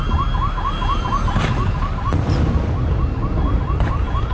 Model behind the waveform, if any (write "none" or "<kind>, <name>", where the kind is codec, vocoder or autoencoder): none